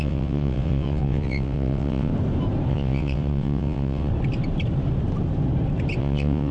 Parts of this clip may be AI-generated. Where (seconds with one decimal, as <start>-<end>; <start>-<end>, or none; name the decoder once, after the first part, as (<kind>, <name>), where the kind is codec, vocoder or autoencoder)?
0.0-2.1 (vocoder, WaveNeXt); 2.7-4.1; 6.0-6.5

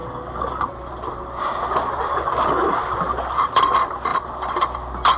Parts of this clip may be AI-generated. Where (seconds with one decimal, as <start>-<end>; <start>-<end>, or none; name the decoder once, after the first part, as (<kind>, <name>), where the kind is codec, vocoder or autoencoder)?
0.0-0.6 (codec, DAC); 2.1-2.8